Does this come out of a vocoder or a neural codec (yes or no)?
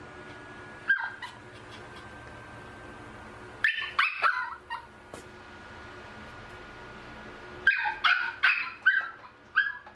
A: no